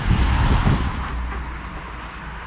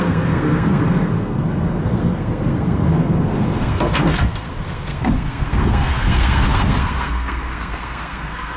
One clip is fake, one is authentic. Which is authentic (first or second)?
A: first